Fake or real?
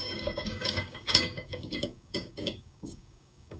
fake